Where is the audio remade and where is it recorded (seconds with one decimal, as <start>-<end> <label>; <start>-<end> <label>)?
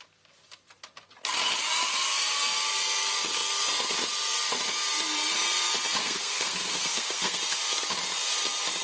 0.0-6.0 recorded; 6.0-7.4 remade; 7.4-8.8 recorded